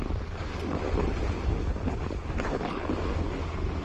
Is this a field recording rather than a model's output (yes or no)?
yes